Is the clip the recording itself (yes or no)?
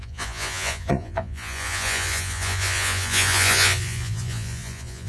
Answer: no